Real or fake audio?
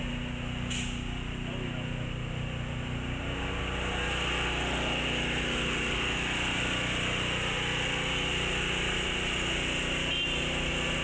real